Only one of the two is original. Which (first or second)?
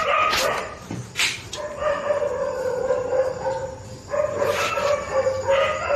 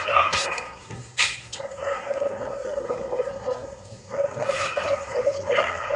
first